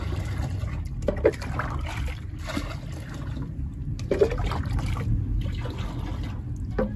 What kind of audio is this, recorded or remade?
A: recorded